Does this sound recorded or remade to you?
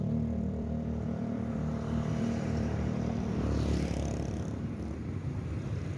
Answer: remade